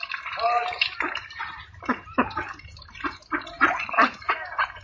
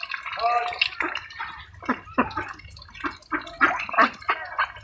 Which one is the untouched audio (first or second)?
second